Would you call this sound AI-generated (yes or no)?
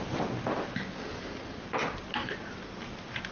no